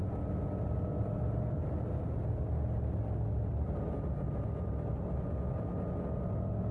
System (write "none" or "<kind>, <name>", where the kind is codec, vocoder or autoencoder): none